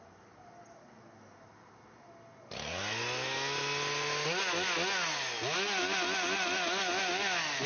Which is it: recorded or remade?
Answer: recorded